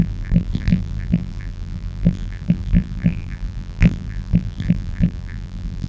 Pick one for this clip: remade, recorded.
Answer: remade